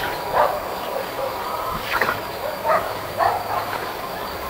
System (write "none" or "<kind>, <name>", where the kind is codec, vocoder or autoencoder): codec, DAC